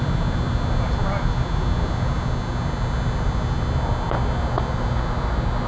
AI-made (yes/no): no